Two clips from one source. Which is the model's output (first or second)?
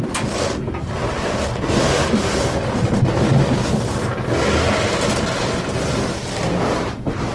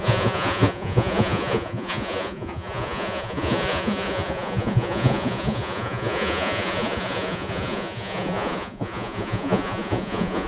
second